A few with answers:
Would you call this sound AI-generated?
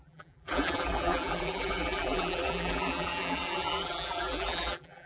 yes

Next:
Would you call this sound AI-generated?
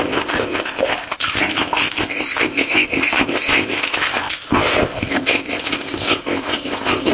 yes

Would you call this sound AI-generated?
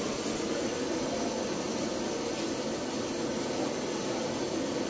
no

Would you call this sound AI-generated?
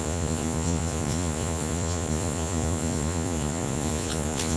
yes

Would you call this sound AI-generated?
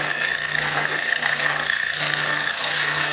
yes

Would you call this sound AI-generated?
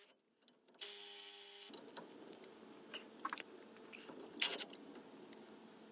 no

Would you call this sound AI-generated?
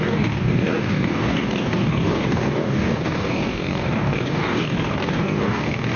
yes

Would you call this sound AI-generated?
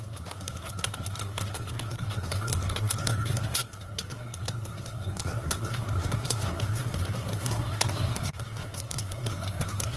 yes